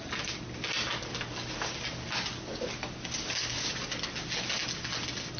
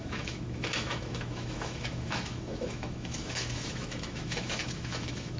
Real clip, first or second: first